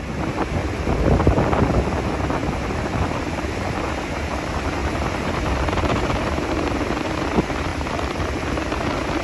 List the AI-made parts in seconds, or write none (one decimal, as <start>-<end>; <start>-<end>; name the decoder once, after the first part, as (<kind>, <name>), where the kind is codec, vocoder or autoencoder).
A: 0.6-1.4 (vocoder, BigVGAN v2); 2.4-3.9; 4.8-6.0; 7.7-8.7

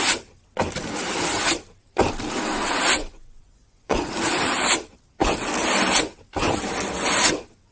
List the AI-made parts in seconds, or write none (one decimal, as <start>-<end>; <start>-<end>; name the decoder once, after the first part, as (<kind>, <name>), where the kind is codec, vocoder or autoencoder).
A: 3.0-4.1 (vocoder, Vocos)